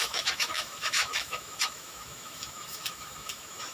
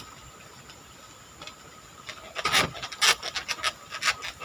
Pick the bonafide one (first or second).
second